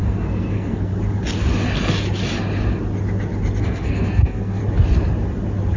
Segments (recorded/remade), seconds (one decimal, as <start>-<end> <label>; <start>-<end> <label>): 0.0-0.9 remade; 0.9-3.6 recorded; 3.6-4.6 remade; 4.6-5.8 recorded